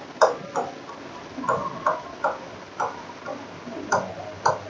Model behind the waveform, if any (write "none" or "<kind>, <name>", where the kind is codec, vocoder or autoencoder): none